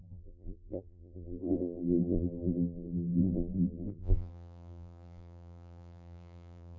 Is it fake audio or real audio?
fake